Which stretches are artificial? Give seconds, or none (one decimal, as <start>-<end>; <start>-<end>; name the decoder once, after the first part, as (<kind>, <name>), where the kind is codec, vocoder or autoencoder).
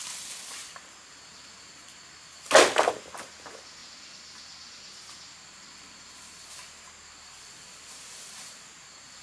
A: none